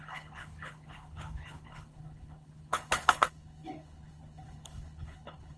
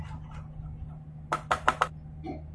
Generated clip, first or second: first